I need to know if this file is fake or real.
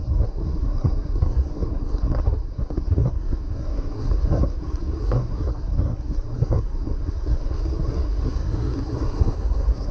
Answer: fake